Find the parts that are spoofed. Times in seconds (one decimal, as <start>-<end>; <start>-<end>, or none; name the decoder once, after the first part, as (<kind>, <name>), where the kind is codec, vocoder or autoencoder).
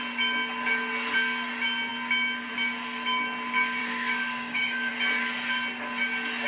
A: 3.8-4.9 (codec, DAC)